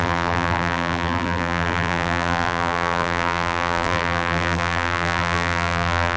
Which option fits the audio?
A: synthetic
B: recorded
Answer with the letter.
A